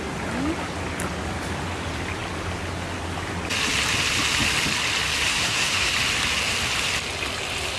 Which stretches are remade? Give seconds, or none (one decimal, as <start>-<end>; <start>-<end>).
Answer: 5.3-5.9